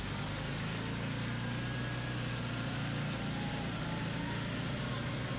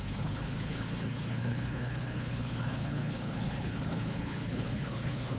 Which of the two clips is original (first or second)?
first